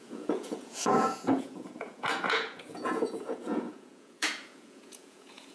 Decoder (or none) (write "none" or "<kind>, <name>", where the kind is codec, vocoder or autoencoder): vocoder, Vocos